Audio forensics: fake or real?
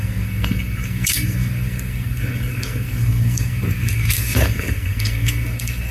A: fake